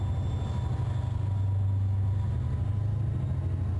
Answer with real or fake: real